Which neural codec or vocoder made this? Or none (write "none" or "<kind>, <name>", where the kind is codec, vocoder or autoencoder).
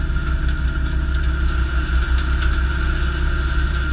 none